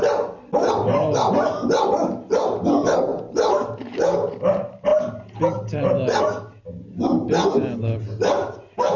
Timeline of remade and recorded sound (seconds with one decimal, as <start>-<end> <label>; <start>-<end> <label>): 0.0-9.0 recorded